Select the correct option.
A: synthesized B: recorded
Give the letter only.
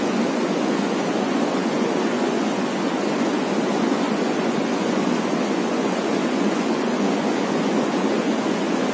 A